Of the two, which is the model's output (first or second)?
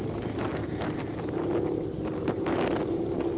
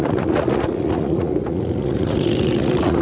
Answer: second